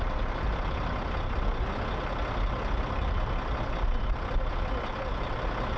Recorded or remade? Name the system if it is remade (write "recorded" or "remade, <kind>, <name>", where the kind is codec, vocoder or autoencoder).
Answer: recorded